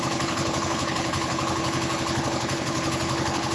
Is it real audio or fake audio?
fake